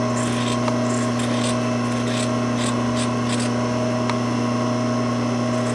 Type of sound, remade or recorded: recorded